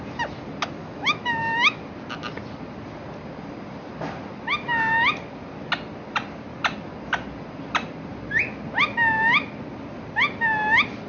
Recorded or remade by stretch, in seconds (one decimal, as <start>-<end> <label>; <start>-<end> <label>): 0.0-0.8 recorded; 0.8-1.8 remade; 1.8-11.1 recorded